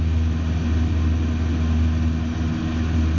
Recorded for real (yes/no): yes